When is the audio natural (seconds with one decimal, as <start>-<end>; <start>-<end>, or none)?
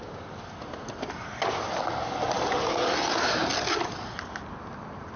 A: 0.0-5.2